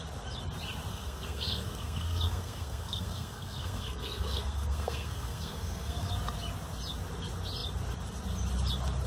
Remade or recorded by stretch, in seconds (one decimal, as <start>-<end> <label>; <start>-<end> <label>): 0.0-0.9 recorded; 0.9-6.1 remade; 6.1-9.1 recorded